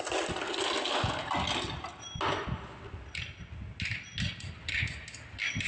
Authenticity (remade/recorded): recorded